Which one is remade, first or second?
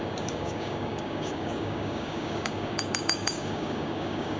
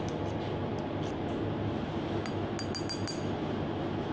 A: first